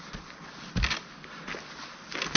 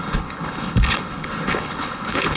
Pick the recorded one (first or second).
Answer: first